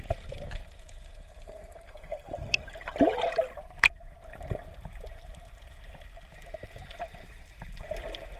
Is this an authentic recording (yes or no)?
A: no